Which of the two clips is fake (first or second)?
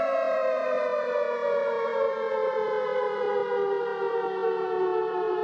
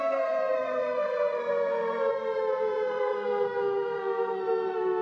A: second